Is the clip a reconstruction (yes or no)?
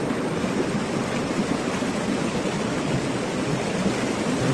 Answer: no